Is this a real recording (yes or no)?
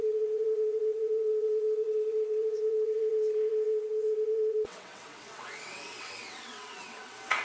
no